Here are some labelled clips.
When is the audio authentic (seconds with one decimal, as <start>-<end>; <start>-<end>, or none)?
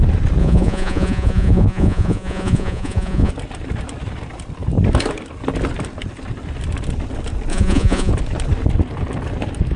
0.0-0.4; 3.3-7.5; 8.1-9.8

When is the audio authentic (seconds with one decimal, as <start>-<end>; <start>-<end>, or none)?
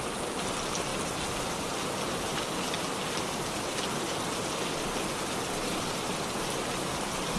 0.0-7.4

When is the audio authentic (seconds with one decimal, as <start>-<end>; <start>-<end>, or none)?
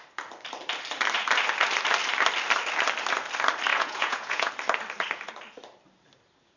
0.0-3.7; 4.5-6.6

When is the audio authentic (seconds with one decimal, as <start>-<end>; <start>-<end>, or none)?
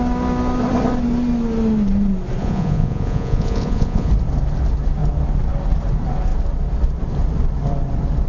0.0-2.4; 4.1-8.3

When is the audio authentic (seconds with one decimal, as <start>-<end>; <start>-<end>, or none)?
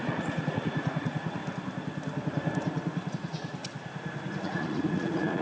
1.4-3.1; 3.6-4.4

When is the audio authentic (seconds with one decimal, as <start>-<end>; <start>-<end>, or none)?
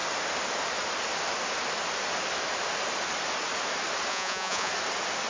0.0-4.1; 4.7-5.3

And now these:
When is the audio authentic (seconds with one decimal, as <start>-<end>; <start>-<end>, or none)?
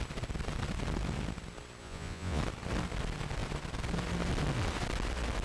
0.0-1.8; 2.4-5.4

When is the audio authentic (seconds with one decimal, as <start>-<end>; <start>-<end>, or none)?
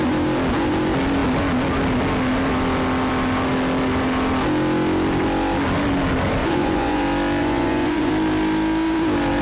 0.0-6.4; 7.0-7.4; 8.1-9.4